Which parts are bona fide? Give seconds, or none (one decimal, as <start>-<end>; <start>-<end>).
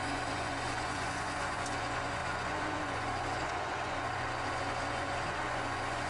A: none